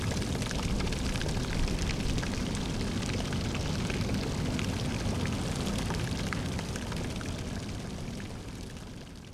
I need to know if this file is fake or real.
real